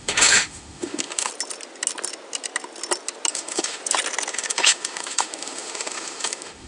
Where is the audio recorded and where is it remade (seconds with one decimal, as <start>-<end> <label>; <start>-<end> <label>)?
0.0-1.3 remade; 1.3-3.3 recorded; 3.3-3.8 remade; 3.8-4.3 recorded; 4.3-6.7 remade